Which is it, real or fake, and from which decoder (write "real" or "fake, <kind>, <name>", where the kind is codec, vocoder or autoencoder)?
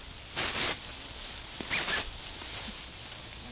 fake, vocoder, BigVGAN v2